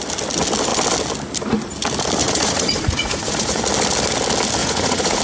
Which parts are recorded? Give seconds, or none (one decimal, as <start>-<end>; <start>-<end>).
0.0-2.2; 3.6-4.6